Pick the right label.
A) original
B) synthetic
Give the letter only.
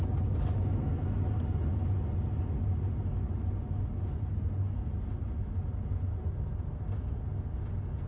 A